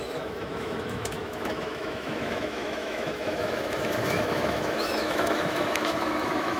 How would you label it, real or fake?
fake